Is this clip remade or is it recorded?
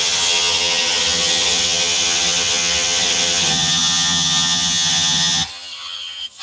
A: remade